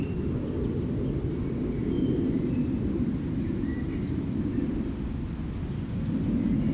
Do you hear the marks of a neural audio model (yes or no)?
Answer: no